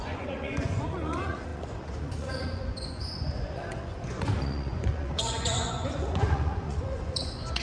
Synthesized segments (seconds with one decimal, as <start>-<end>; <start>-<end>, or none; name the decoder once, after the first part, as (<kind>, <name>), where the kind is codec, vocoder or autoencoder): 0.0-7.6 (vocoder, Vocos)

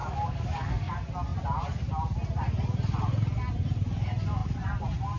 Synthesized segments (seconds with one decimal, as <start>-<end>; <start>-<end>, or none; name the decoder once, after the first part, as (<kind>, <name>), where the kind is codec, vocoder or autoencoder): 0.0-0.9 (codec, DAC)

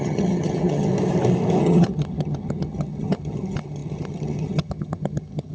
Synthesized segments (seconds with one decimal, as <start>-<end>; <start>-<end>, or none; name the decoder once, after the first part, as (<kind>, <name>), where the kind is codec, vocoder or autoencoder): 0.0-0.9 (vocoder, HiFi-GAN); 1.6-5.5

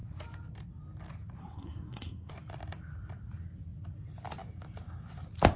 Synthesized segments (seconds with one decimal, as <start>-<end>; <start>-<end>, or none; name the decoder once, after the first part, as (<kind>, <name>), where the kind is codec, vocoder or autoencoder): 1.4-2.3 (codec, SNAC)